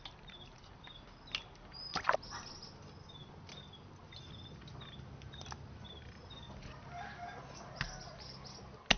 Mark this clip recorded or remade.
recorded